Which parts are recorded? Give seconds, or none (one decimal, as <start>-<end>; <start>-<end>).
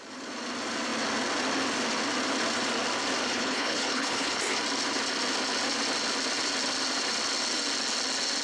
0.0-3.3; 4.4-8.4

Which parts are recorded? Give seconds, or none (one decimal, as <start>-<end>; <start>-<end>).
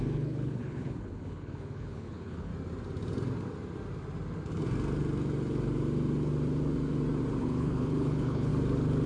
2.5-7.4; 8.5-9.1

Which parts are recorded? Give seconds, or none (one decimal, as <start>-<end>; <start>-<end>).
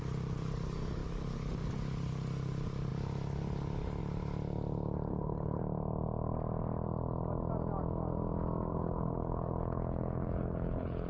0.0-5.1; 5.6-8.7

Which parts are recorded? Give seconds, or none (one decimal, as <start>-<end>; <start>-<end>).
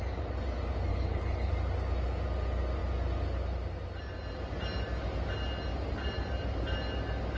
0.0-0.9; 1.5-7.4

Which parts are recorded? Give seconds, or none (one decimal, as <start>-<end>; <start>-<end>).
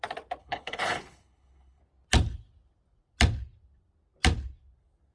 0.0-0.4; 1.8-5.1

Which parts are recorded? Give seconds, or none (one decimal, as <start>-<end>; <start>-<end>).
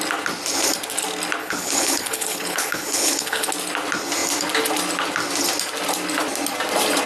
0.0-1.4; 3.5-7.1